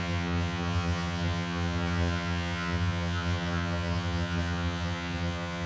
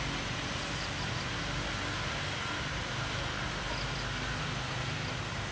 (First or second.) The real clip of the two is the second